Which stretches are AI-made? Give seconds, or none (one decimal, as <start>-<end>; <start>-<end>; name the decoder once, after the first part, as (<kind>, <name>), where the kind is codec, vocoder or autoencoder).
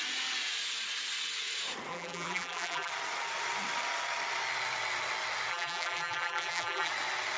1.9-2.9 (vocoder, BigVGAN v2); 5.5-6.9